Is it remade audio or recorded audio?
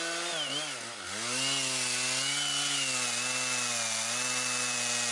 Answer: recorded